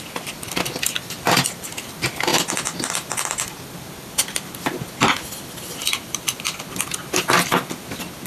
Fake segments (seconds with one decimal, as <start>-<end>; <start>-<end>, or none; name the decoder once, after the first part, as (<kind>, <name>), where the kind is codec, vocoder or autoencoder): none